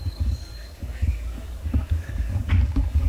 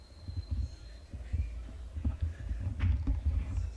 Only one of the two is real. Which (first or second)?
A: second